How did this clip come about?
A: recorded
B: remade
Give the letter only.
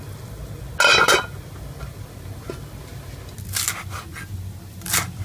A